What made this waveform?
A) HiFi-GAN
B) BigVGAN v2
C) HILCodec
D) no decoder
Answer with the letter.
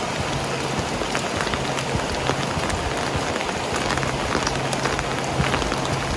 D